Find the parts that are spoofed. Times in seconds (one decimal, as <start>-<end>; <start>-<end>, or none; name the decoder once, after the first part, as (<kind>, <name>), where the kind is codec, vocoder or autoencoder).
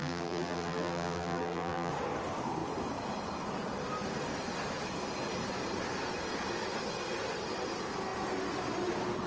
0.0-1.9 (vocoder, BigVGAN v2)